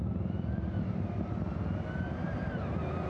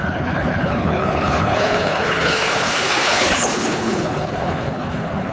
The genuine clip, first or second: first